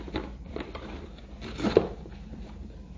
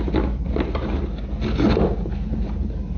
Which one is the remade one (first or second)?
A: first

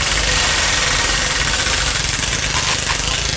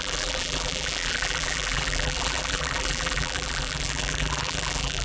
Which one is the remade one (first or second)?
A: second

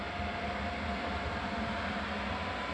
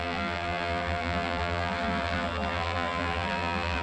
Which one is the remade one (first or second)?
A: second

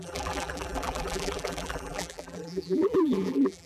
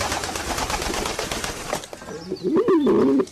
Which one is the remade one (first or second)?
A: first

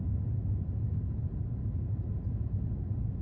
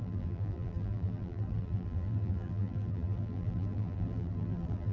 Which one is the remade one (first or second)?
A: second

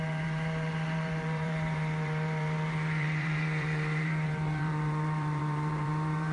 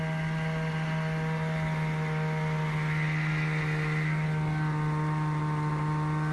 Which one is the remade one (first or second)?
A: first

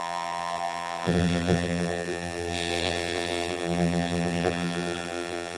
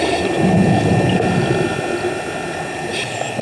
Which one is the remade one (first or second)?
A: first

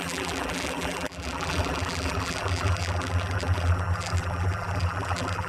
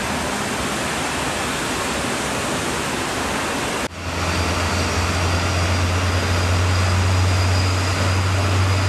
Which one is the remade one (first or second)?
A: first